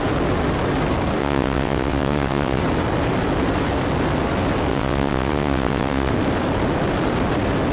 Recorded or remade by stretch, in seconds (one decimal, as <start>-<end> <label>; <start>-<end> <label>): 0.0-1.2 recorded; 1.2-2.6 remade; 2.6-4.7 recorded; 4.7-6.1 remade; 6.1-7.7 recorded